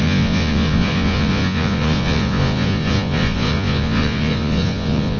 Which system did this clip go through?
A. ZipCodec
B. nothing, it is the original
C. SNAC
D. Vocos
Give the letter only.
D